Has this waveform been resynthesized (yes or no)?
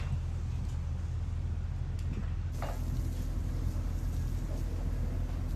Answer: no